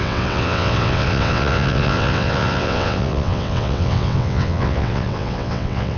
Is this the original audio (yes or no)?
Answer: no